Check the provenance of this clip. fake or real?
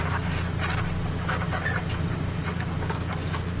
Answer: real